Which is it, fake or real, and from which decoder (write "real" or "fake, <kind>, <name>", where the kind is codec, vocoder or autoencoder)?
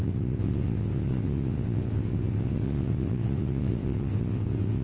fake, vocoder, WaveNeXt